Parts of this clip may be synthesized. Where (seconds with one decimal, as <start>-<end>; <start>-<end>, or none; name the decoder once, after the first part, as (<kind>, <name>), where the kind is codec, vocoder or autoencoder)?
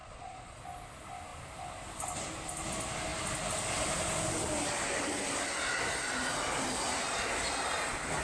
0.0-0.6 (vocoder, Vocos)